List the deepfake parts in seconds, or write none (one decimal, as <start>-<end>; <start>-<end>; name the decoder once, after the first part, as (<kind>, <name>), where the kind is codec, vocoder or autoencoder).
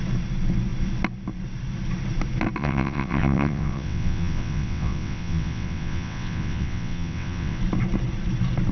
2.6-7.6 (vocoder, WaveNeXt)